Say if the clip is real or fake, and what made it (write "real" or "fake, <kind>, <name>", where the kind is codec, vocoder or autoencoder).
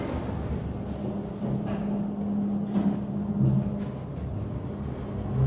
real